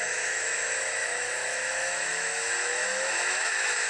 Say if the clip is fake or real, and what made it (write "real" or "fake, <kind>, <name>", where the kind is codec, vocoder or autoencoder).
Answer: fake, autoencoder, DAC-VAE